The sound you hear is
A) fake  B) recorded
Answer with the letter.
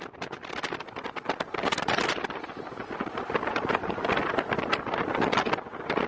B